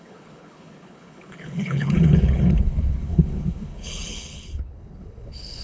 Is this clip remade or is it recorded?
remade